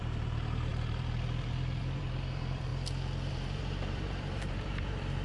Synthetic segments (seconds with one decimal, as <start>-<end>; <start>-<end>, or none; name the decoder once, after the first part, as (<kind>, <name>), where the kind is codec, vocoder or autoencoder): 0.0-2.7 (vocoder, BigVGAN v2); 3.3-5.2